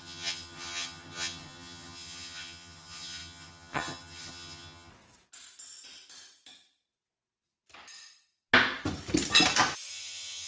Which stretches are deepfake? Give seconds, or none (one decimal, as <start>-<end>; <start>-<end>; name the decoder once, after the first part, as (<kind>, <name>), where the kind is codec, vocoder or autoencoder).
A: 0.0-4.9 (vocoder, HiFi-GAN); 9.9-10.5